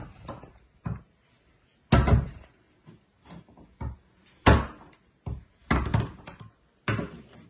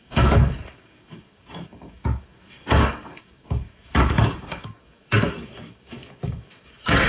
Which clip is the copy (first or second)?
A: second